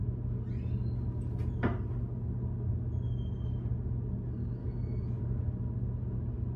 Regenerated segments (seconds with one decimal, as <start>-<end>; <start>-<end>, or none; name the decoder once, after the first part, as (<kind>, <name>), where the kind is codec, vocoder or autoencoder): 4.6-5.2 (autoencoder, DAC-VAE)

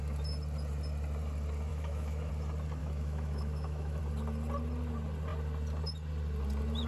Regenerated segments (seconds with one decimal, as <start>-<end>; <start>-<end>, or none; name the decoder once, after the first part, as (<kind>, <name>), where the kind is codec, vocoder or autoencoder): 1.7-2.3 (autoencoder, DAC-VAE); 2.8-4.0

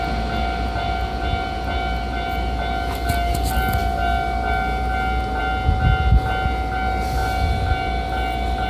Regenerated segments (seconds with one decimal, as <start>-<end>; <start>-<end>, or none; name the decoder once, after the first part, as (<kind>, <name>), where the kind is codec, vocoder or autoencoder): none

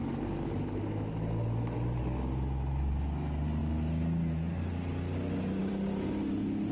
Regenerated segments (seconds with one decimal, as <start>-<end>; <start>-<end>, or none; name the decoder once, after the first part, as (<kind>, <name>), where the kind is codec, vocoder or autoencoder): none